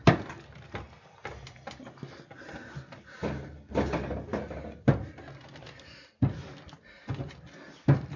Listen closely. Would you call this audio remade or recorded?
recorded